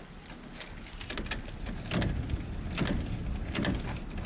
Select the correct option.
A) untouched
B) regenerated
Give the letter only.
A